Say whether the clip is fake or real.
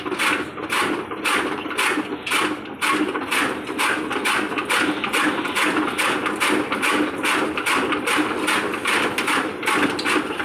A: real